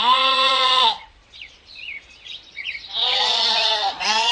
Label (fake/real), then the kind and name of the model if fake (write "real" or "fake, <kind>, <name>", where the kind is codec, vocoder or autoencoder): fake, vocoder, Vocos